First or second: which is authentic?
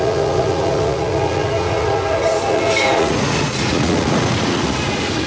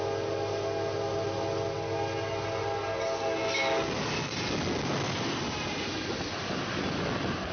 second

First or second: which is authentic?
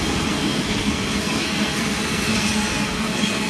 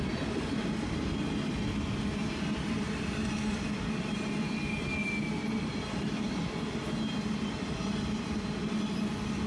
second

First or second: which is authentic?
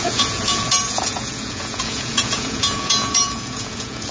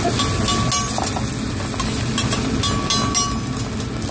second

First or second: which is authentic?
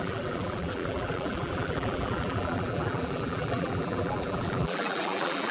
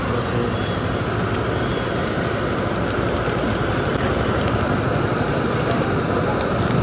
second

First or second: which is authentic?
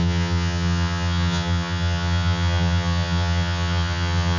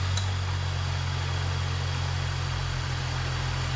second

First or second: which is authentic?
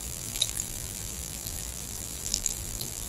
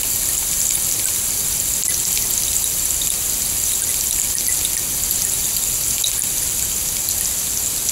second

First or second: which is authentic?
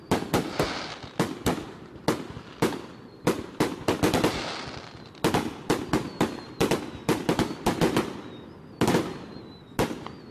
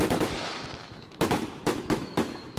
first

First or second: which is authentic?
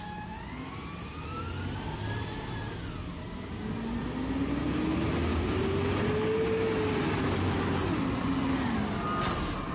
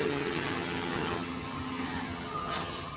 first